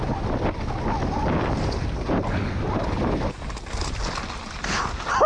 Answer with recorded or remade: recorded